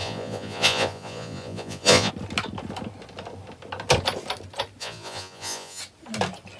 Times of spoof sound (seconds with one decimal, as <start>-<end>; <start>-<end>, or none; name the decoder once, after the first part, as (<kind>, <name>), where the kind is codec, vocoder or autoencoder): 0.0-2.1 (vocoder, Vocos); 4.8-5.8